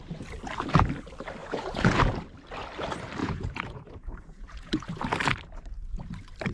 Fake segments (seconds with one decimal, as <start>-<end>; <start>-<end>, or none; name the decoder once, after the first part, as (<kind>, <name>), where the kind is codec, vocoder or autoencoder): 1.4-2.0 (vocoder, Vocos); 3.2-5.0